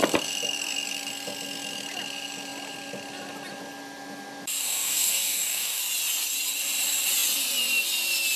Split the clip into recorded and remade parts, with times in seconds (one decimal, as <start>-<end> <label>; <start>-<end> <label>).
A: 0.0-4.6 recorded; 4.6-5.8 remade; 5.8-8.4 recorded